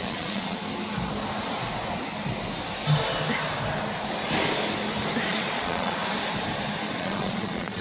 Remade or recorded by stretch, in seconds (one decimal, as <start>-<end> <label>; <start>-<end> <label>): 0.0-0.6 remade; 0.6-5.3 recorded; 5.3-6.0 remade; 6.0-7.0 recorded; 7.0-7.8 remade